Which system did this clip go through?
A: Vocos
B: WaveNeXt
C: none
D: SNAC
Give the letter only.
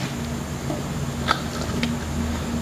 C